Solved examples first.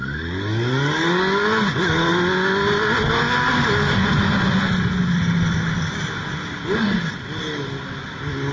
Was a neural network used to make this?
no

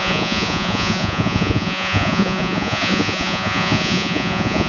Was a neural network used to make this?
yes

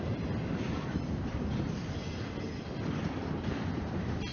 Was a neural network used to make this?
no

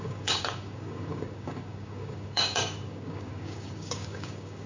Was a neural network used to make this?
yes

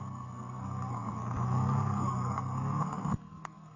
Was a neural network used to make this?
yes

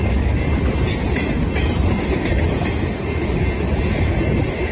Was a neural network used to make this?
no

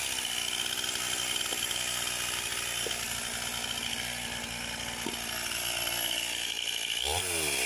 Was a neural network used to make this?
no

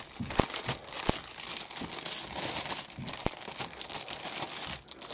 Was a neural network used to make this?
no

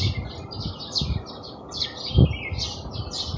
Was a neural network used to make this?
no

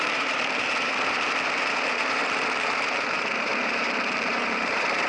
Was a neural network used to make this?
yes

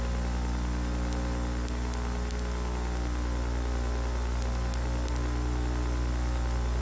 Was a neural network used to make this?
no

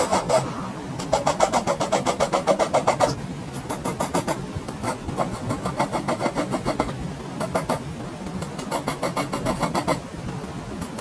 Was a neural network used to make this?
no